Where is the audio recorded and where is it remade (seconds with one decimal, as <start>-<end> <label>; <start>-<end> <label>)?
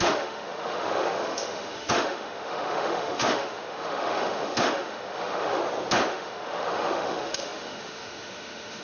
0.0-5.6 remade; 5.6-6.1 recorded; 6.1-8.8 remade